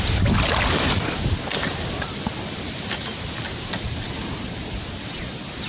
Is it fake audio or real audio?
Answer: real